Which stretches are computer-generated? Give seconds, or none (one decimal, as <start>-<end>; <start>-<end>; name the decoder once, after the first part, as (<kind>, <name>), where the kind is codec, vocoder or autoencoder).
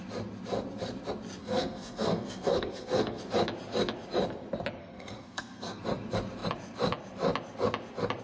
1.4-3.2 (codec, SNAC); 4.8-5.8